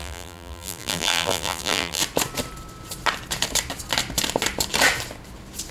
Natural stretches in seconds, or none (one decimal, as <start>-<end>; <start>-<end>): 2.0-5.7